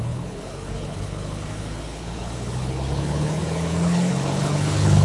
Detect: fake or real fake